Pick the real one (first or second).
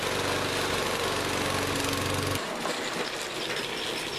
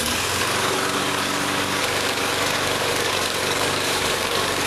first